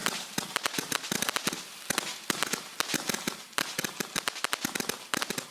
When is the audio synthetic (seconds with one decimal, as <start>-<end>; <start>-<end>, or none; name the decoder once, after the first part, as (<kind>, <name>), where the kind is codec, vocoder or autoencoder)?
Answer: none